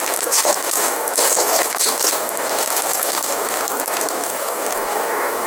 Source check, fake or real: fake